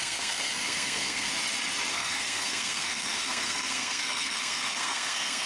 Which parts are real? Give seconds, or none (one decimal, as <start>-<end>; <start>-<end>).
1.3-1.9